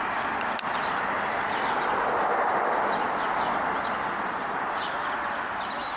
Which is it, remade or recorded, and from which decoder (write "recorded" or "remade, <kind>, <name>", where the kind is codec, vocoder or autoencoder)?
recorded